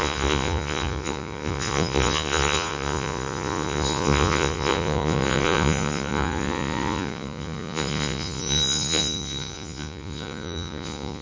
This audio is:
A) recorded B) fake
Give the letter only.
B